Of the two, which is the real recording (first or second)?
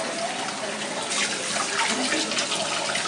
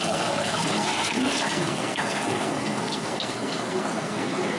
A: first